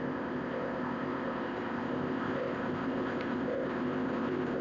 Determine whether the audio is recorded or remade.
remade